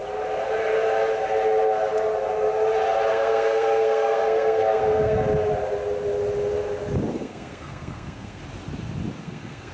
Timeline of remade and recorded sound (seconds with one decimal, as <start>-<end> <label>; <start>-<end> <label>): 0.0-3.1 recorded; 3.1-5.2 remade; 5.2-7.1 recorded; 7.1-8.4 remade; 8.4-9.2 recorded; 9.2-9.7 remade